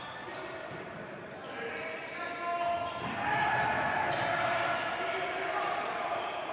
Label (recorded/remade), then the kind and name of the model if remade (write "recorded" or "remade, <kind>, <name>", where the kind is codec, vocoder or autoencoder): recorded